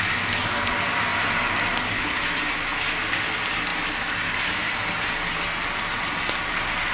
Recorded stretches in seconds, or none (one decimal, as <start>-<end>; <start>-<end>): 0.0-6.9

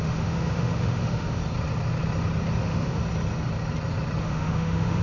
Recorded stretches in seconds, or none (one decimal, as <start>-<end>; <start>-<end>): 1.4-2.6; 3.0-4.2

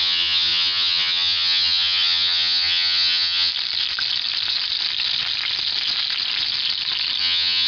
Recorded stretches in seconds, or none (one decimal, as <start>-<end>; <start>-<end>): 3.5-7.2

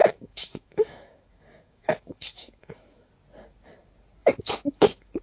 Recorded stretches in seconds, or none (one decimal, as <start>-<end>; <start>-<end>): 3.1-4.2

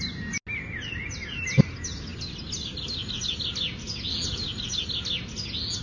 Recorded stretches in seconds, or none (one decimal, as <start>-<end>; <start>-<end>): 0.0-5.8

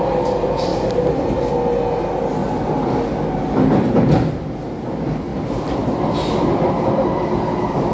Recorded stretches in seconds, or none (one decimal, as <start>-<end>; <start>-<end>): 0.0-7.9